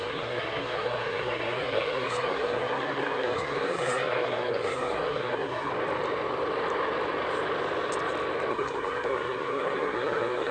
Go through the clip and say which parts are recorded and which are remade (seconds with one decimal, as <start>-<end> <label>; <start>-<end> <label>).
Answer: 0.0-5.7 remade; 5.7-8.5 recorded; 8.5-10.5 remade